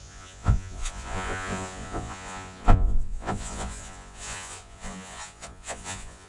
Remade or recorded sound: remade